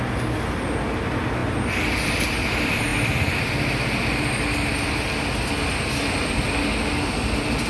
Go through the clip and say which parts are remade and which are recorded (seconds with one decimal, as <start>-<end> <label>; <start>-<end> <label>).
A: 0.0-7.7 recorded